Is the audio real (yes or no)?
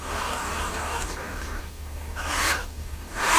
no